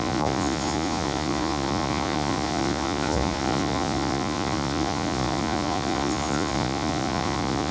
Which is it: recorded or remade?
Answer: remade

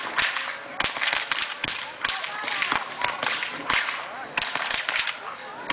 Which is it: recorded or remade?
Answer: recorded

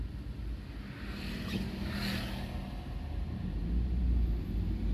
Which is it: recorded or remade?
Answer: recorded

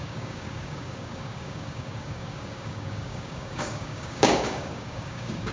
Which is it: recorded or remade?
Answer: remade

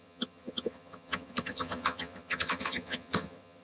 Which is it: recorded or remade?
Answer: remade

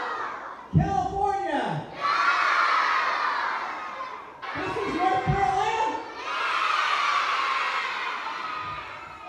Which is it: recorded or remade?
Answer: recorded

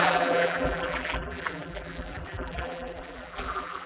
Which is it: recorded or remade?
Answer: remade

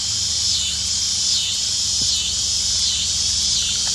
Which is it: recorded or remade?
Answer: remade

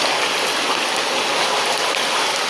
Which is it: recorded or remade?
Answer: recorded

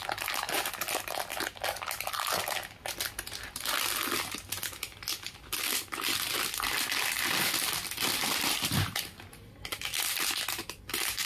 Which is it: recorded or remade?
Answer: recorded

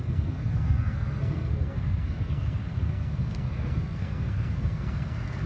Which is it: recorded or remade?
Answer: remade